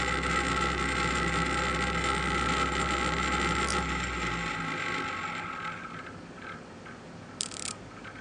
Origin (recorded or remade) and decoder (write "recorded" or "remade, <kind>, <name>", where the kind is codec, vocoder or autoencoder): recorded